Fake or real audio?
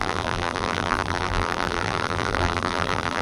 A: fake